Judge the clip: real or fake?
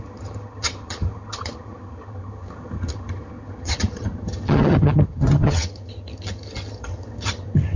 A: fake